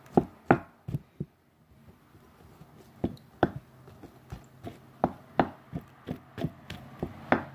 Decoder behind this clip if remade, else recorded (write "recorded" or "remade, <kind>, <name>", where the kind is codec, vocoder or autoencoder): recorded